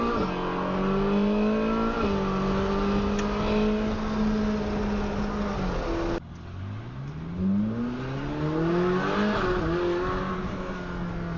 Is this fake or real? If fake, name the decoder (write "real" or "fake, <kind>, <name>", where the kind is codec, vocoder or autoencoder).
real